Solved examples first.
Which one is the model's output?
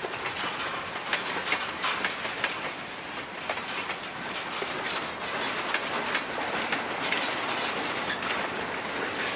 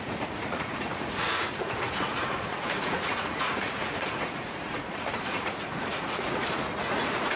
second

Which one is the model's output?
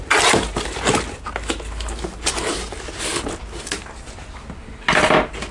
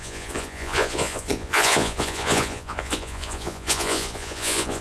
second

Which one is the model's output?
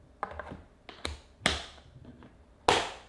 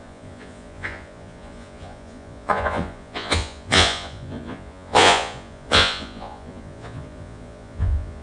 second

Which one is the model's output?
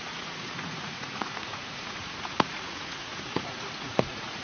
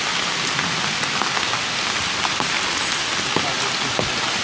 first